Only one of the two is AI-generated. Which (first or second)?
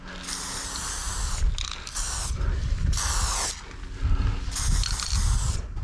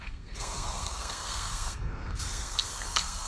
second